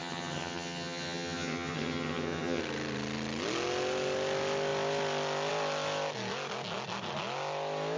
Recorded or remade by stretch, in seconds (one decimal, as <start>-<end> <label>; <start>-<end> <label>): 0.0-2.6 remade; 2.6-8.0 recorded